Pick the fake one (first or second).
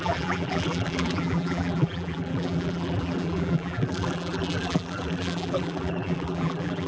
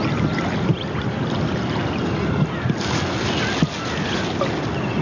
first